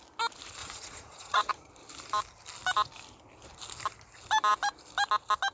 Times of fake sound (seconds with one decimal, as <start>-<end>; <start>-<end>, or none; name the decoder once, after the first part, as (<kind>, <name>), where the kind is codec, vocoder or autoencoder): 0.6-1.7 (vocoder, Vocos)